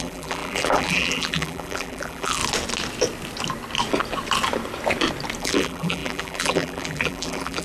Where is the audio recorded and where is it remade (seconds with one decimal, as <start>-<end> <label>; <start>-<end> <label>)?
0.0-2.4 remade; 2.4-5.4 recorded; 5.4-7.6 remade